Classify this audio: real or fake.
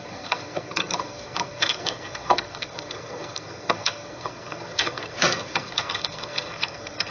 fake